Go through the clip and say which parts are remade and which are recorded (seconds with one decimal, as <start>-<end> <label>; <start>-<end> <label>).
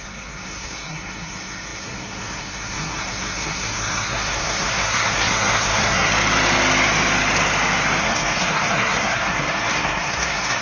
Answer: 0.0-6.1 remade; 6.1-8.0 recorded; 8.0-10.6 remade